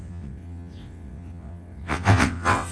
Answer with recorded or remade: remade